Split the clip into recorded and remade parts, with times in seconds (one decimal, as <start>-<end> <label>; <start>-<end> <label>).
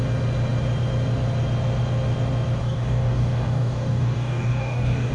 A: 0.0-2.6 recorded; 2.6-5.1 remade